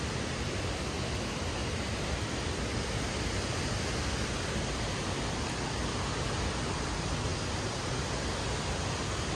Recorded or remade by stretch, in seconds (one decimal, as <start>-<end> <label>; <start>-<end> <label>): 0.0-9.4 recorded